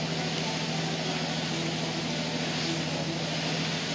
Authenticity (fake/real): real